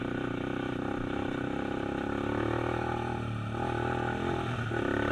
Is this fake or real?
real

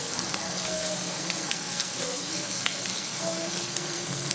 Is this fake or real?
fake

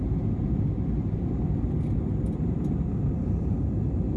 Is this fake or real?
real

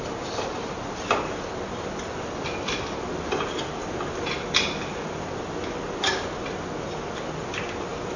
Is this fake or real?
real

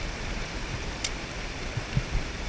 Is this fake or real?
fake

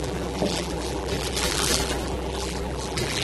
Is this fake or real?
fake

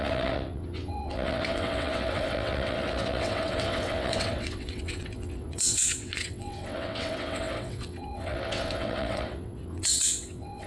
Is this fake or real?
fake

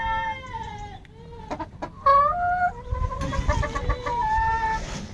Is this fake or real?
real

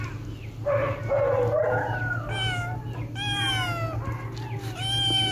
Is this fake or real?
real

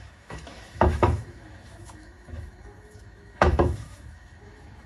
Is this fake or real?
fake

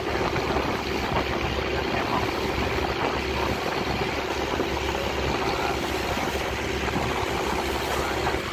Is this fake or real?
real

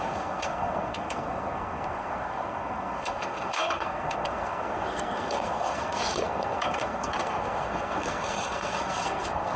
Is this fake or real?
fake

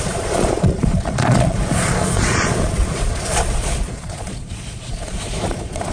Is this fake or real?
fake